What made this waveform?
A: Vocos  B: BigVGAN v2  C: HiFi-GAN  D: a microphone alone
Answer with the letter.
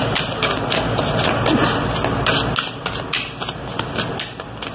D